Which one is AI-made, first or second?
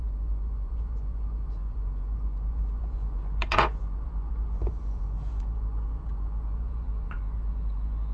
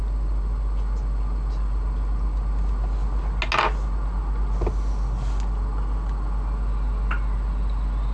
first